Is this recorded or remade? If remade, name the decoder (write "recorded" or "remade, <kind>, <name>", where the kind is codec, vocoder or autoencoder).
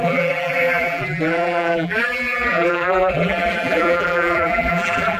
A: remade, vocoder, BigVGAN v2